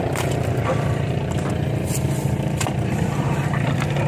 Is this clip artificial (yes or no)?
yes